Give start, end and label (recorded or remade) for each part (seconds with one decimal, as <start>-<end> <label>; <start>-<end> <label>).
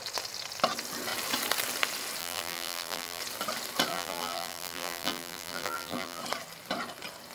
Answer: 0.0-2.2 recorded; 2.2-3.2 remade; 3.2-3.9 recorded; 3.9-6.2 remade; 6.2-7.3 recorded